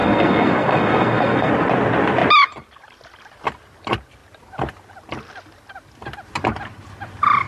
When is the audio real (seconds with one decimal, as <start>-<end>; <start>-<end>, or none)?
1.5-7.5